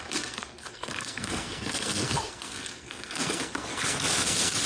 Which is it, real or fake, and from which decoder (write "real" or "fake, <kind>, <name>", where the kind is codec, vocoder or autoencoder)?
fake, codec, SNAC